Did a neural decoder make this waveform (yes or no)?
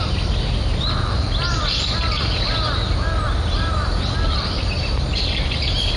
yes